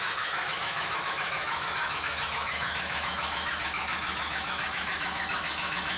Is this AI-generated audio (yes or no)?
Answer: yes